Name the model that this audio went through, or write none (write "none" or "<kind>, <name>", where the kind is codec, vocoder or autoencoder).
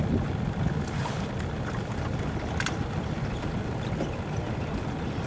none